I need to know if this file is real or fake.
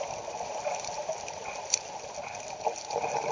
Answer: real